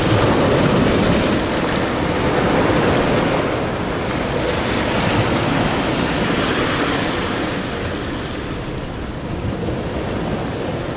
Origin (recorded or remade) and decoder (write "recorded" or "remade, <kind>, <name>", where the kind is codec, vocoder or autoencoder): recorded